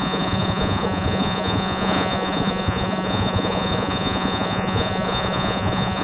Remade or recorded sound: remade